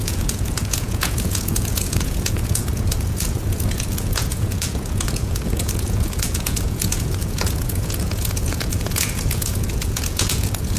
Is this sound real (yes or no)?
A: no